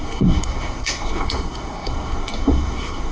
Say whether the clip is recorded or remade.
remade